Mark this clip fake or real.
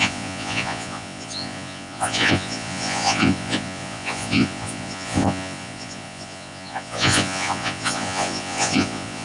fake